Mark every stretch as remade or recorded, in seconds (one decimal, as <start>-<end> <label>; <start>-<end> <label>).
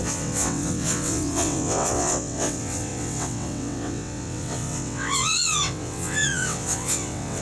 0.0-7.4 remade